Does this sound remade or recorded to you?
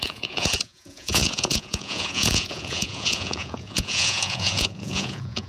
remade